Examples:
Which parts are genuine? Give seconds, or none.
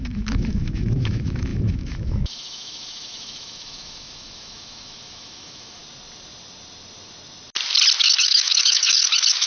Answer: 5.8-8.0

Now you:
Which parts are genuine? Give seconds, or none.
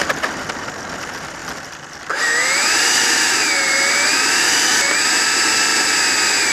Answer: 0.0-6.5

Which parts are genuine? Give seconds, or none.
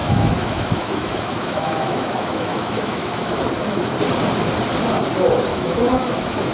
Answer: 3.4-5.5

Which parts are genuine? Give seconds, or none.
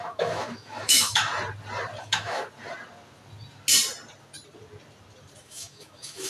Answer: 1.3-2.0; 2.4-5.4